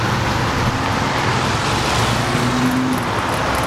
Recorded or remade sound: recorded